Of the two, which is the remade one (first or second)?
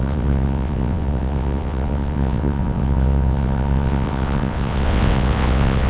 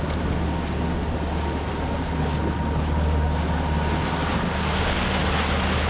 first